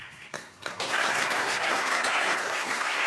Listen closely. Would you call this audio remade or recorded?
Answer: remade